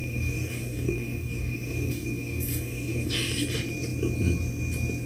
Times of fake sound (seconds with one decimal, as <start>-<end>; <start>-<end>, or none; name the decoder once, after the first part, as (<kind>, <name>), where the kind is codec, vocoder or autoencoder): 0.0-3.1 (codec, DAC)